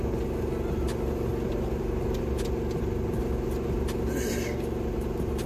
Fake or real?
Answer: real